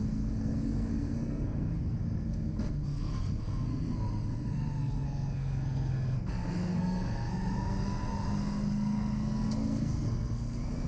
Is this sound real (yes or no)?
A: no